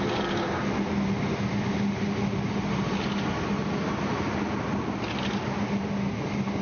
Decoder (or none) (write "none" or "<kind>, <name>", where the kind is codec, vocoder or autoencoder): none